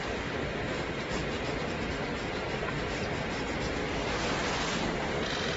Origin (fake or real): real